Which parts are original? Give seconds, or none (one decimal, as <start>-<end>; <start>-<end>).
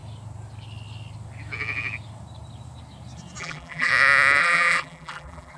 0.0-3.4; 3.9-4.4